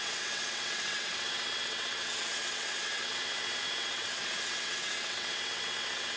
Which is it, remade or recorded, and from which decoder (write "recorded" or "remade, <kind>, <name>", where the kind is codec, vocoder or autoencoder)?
remade, vocoder, WaveNeXt